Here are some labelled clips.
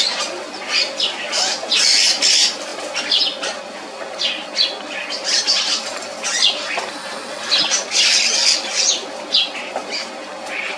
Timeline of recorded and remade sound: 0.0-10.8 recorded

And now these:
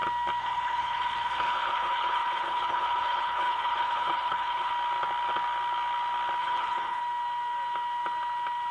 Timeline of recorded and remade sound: 0.0-0.4 recorded; 0.4-4.7 remade; 4.7-6.4 recorded; 6.4-7.0 remade; 7.0-8.7 recorded

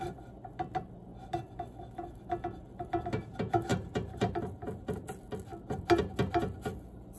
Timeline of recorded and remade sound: 0.0-3.7 recorded; 3.7-4.3 remade; 4.3-7.2 recorded

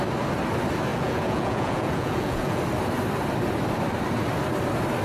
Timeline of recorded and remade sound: 0.0-0.9 recorded; 0.9-2.6 remade; 2.6-5.0 recorded

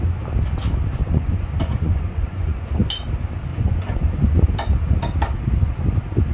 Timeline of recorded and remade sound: 0.0-1.0 recorded; 1.0-2.7 remade; 2.7-3.5 recorded; 3.5-4.5 remade; 4.5-6.3 recorded

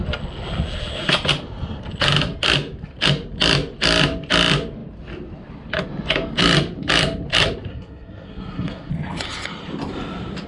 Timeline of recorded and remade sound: 0.0-7.7 recorded; 7.7-8.9 remade; 8.9-10.5 recorded

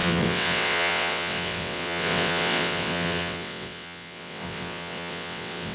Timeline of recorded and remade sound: 0.0-5.7 remade